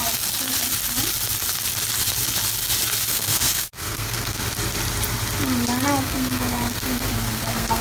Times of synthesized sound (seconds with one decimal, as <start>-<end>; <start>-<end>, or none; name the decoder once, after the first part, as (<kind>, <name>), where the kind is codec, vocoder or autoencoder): 3.1-4.4 (codec, SNAC); 6.0-7.8